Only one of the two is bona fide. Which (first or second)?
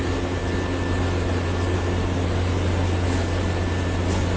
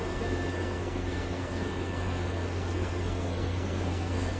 first